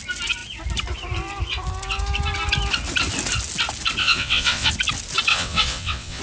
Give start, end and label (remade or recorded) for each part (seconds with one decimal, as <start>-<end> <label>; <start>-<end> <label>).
0.0-4.0 recorded; 4.0-4.7 remade; 4.7-5.3 recorded; 5.3-6.2 remade